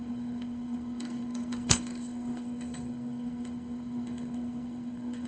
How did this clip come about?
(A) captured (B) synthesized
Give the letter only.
B